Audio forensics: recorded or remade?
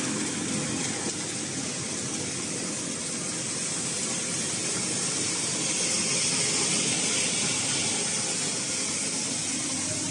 recorded